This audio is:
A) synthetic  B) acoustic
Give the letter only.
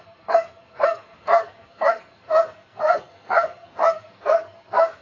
A